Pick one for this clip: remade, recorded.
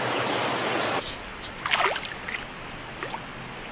recorded